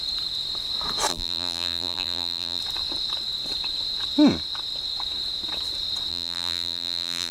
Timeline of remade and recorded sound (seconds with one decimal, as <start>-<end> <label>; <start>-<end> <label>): 0.0-1.1 recorded; 1.1-2.6 remade; 2.6-6.1 recorded; 6.1-7.3 remade